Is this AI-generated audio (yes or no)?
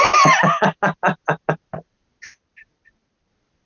no